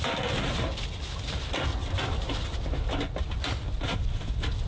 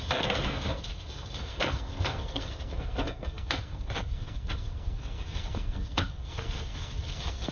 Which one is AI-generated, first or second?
second